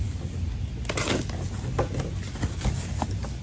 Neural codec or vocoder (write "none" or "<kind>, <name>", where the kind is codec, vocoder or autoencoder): none